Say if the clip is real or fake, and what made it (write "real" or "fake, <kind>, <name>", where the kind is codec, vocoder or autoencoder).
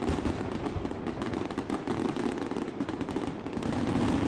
real